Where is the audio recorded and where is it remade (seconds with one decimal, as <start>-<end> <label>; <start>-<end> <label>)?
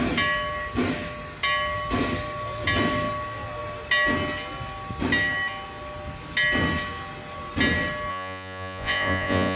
0.0-8.1 recorded; 8.1-9.6 remade